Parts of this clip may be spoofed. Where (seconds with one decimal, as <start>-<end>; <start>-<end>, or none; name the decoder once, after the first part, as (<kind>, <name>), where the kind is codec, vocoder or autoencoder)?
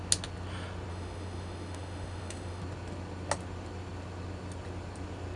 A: 0.9-2.6 (autoencoder, DAC-VAE)